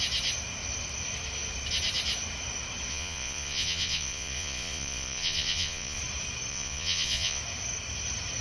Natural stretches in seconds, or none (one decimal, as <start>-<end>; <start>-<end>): 0.0-2.9; 6.0-6.5; 7.4-8.4